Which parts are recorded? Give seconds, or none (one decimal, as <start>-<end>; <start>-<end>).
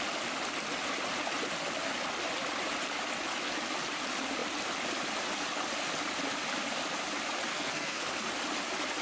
0.0-7.5; 8.1-9.0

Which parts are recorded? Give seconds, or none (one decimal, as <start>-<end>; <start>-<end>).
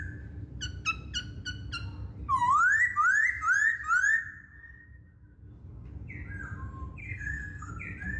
0.0-7.0; 7.7-8.2